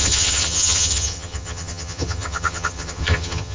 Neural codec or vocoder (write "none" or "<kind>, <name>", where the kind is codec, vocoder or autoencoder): vocoder, HiFi-GAN